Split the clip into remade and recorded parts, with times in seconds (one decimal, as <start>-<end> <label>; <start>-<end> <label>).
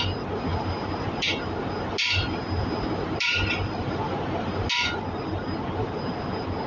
0.0-0.5 recorded; 0.5-1.1 remade; 1.1-2.0 recorded; 2.0-4.7 remade; 4.7-5.8 recorded; 5.8-6.7 remade